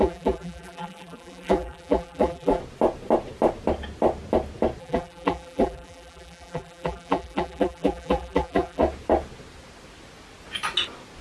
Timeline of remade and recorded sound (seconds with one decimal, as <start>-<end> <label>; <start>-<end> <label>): 0.0-2.6 remade; 2.6-4.8 recorded; 4.8-8.8 remade; 8.8-11.2 recorded